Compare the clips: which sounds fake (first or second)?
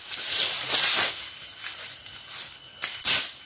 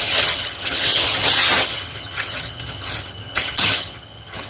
second